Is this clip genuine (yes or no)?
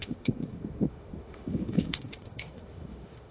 no